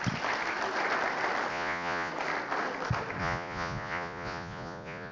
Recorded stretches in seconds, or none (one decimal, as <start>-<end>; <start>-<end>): 0.0-1.5; 2.1-3.2